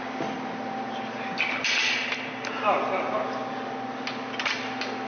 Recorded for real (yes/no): yes